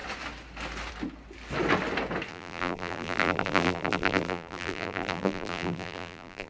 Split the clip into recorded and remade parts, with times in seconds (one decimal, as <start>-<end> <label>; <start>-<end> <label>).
0.0-2.3 recorded; 2.3-6.5 remade